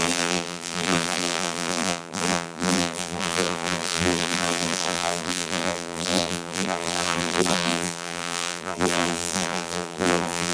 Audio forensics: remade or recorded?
remade